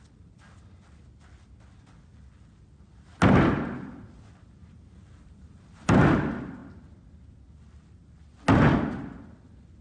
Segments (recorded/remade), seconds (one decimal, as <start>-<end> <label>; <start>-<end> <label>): 0.0-4.6 recorded; 4.6-5.9 remade; 5.9-9.8 recorded